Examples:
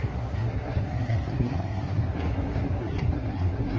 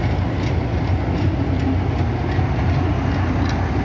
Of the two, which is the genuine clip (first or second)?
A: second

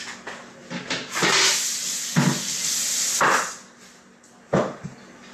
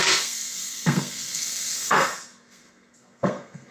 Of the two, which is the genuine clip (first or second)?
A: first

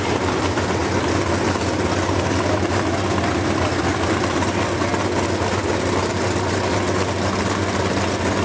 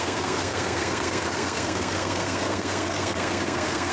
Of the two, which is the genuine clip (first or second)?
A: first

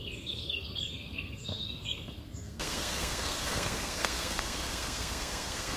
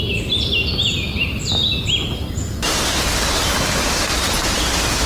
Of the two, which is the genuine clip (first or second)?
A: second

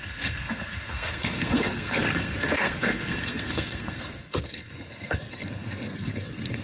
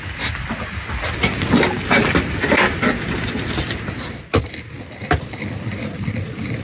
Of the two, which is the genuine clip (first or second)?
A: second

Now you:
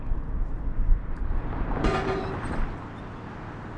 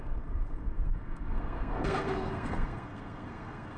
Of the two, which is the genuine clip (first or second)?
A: first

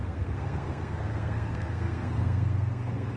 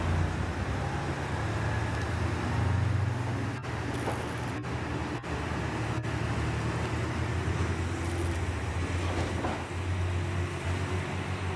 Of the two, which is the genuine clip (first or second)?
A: second